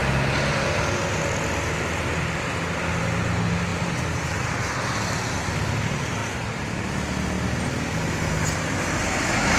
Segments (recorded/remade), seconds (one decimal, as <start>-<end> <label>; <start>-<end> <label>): 0.0-9.6 recorded